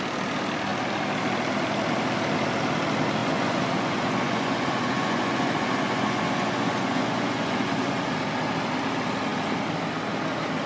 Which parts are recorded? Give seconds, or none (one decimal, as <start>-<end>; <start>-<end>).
0.0-3.2; 8.1-10.7